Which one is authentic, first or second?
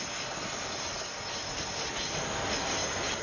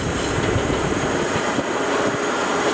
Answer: first